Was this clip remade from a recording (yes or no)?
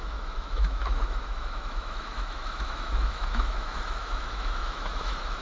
yes